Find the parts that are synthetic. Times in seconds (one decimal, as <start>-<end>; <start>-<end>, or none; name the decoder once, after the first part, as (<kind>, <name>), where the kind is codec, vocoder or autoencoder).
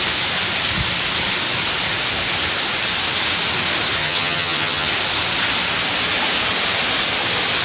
4.0-4.9 (vocoder, HiFi-GAN)